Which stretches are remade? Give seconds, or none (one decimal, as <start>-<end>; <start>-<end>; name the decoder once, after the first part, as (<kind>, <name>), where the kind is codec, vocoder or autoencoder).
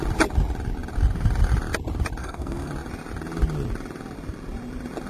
2.2-2.7 (codec, SNAC)